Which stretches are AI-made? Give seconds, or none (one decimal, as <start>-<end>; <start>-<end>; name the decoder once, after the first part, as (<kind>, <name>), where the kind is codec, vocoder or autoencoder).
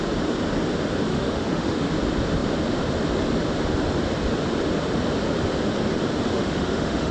1.1-1.9 (autoencoder, DAC-VAE); 6.3-7.1